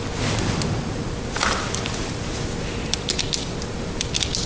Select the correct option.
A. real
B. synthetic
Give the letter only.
A